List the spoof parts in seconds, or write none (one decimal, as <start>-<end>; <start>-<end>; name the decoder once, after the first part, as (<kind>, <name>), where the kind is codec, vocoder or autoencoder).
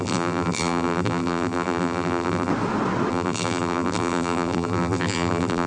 0.0-2.5 (vocoder, BigVGAN v2); 3.1-5.7